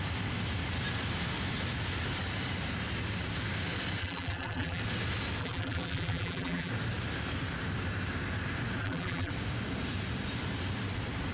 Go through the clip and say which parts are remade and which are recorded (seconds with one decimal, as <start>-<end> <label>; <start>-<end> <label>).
0.0-4.0 recorded; 4.0-4.8 remade; 4.8-5.4 recorded; 5.4-6.7 remade; 6.7-8.8 recorded; 8.8-9.3 remade; 9.3-11.3 recorded